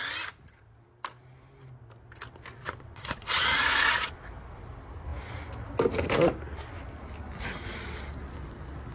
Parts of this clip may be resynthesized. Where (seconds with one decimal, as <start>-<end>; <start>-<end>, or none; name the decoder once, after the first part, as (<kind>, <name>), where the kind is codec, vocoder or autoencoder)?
2.6-4.1 (vocoder, Vocos)